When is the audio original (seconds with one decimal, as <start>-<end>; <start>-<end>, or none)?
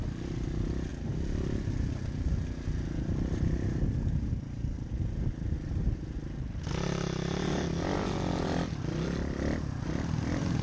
0.0-10.6